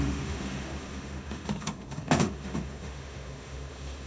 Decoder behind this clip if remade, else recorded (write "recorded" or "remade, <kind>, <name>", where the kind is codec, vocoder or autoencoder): remade, autoencoder, DAC-VAE